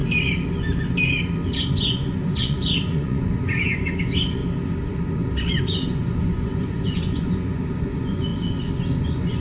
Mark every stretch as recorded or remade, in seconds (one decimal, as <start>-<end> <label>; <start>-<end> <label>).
0.0-1.7 recorded; 1.7-4.4 remade; 4.4-5.6 recorded; 5.6-8.3 remade; 8.3-9.0 recorded; 9.0-9.4 remade

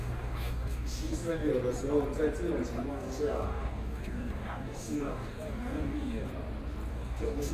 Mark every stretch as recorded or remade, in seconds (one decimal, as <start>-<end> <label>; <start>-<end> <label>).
0.0-1.5 remade; 1.5-2.9 recorded; 2.9-6.3 remade; 6.3-6.9 recorded; 6.9-7.5 remade

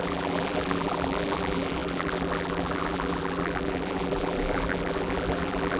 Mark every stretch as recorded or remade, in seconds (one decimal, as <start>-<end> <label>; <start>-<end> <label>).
0.0-5.8 remade

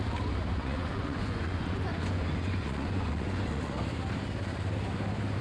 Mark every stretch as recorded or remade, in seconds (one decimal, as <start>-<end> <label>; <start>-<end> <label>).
0.0-0.6 recorded; 0.6-3.8 remade; 3.8-5.4 recorded

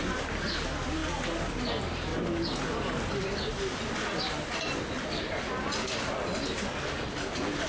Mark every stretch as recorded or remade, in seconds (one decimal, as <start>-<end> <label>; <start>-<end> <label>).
0.0-7.7 recorded

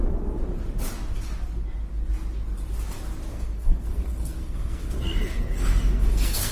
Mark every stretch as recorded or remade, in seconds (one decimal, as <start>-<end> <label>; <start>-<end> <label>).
0.0-3.3 recorded; 3.3-6.5 remade

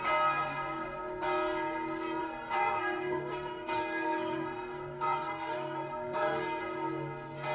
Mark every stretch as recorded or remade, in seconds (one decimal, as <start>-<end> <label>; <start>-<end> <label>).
0.0-2.2 recorded; 2.2-6.6 remade; 6.6-7.5 recorded

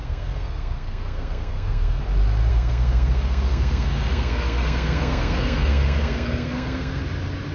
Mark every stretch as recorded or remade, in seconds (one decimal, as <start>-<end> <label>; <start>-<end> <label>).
0.0-2.0 remade; 2.0-2.5 recorded; 2.5-7.0 remade; 7.0-7.5 recorded